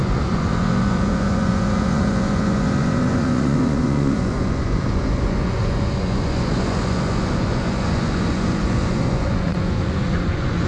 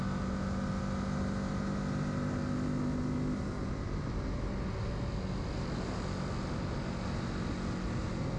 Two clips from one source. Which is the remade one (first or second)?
first